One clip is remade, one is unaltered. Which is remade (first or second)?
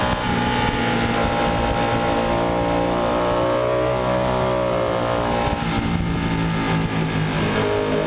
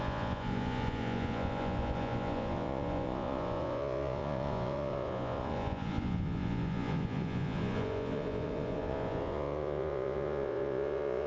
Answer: second